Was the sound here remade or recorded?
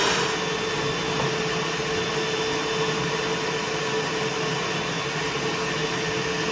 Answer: recorded